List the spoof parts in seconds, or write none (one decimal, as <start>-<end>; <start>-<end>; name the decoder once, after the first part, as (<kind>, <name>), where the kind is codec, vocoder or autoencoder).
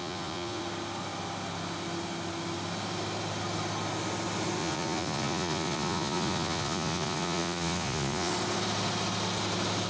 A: 0.0-0.6 (vocoder, Vocos); 4.6-8.3